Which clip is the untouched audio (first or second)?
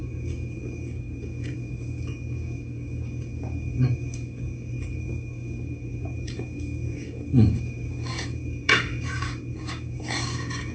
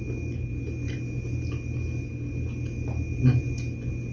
second